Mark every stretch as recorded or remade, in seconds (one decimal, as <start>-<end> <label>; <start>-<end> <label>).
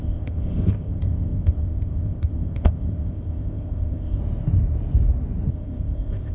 0.0-4.2 remade; 4.2-5.5 recorded; 5.5-6.3 remade